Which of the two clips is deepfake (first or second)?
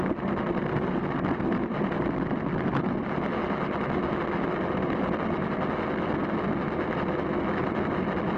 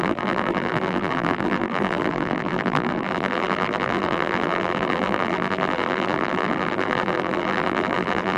second